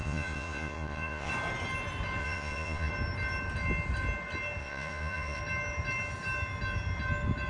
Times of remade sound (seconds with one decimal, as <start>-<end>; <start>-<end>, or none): 0.0-1.3; 2.2-2.9; 4.6-5.4

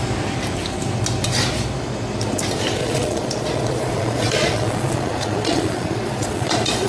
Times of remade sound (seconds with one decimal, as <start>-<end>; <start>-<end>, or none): 2.8-6.9